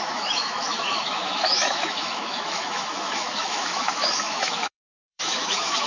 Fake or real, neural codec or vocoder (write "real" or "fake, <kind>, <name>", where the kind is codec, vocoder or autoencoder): fake, autoencoder, DAC-VAE